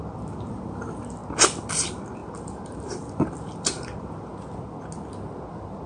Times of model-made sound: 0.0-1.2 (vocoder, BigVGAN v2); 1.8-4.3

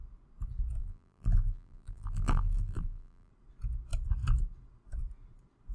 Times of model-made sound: 0.8-3.3 (vocoder, BigVGAN v2)

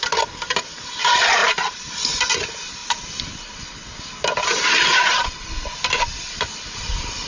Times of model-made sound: 1.4-1.9 (vocoder, BigVGAN v2)

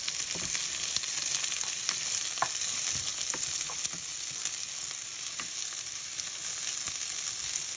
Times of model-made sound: none

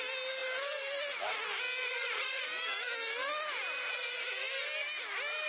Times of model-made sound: 1.8-2.4 (vocoder, Vocos)

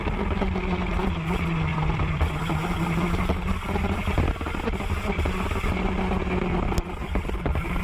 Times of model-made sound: 1.7-2.4 (vocoder, BigVGAN v2); 7.0-7.8

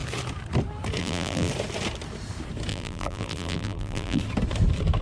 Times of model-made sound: 1.0-1.5 (vocoder, BigVGAN v2); 2.7-4.2